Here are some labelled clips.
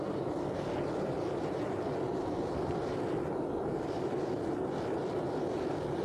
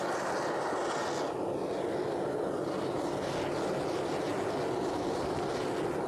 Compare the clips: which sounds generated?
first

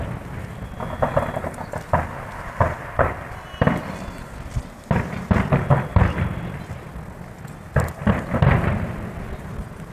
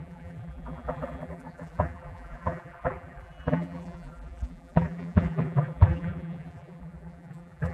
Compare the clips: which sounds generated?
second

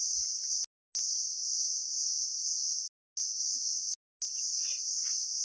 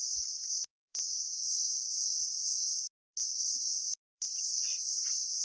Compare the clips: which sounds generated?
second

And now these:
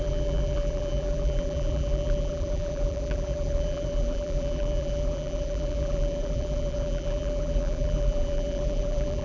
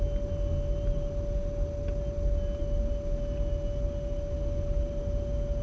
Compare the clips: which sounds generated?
first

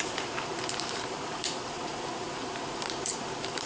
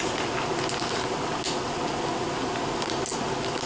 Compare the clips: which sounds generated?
first